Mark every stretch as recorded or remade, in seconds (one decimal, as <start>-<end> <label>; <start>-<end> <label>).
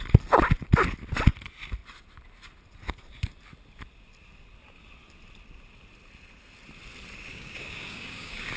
0.0-7.3 recorded; 7.3-8.6 remade